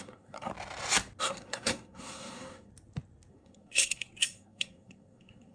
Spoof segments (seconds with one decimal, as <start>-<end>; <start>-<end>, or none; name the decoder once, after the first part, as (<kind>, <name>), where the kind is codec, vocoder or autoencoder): 0.0-0.5 (codec, SNAC); 1.2-2.7; 3.3-5.5